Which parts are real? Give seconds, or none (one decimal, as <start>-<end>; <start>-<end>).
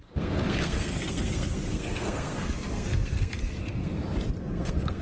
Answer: 3.9-4.4